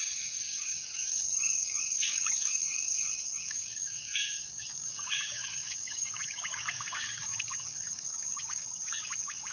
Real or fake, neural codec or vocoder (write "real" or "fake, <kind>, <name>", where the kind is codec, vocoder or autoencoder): fake, codec, DAC